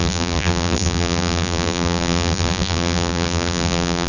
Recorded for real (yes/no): no